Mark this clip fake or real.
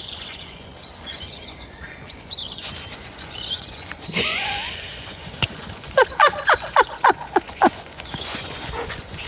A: fake